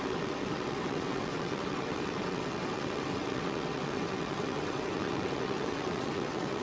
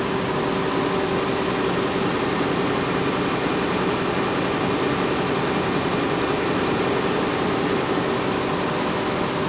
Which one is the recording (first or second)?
second